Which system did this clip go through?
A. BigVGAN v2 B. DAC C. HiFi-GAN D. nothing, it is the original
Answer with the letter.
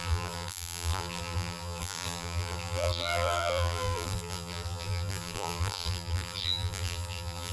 A